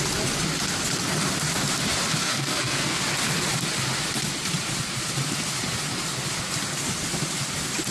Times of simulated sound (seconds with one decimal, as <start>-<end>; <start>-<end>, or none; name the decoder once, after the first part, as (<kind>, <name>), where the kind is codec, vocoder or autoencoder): 2.2-3.0 (codec, SNAC)